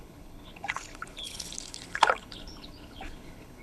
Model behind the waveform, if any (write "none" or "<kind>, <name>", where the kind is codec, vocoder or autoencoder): codec, HILCodec